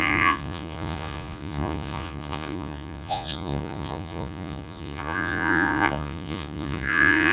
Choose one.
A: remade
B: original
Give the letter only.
A